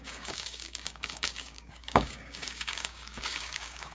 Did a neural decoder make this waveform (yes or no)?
yes